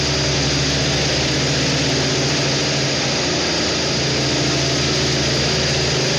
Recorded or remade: recorded